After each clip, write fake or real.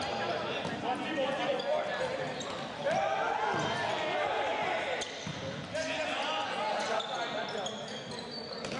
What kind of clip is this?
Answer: real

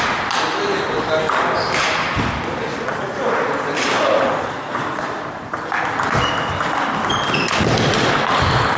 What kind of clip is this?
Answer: real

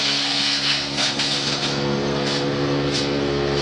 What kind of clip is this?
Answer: fake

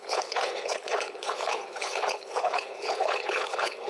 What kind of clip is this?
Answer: fake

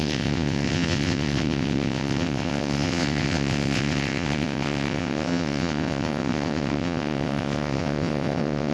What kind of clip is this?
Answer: fake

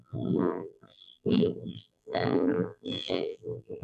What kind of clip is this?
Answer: fake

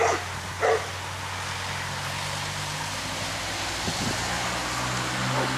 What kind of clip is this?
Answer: real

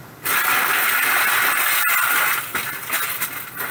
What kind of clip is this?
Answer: real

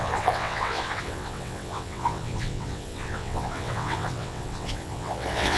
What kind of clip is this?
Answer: fake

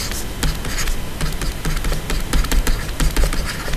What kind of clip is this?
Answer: real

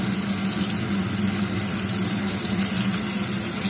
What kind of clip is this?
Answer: real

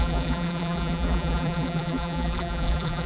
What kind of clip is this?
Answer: fake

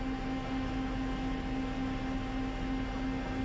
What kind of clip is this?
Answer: real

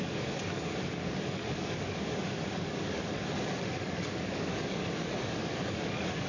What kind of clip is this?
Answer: fake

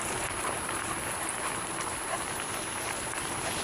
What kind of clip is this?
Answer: real